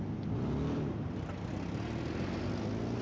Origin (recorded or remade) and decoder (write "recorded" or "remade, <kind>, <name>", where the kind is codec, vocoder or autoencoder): recorded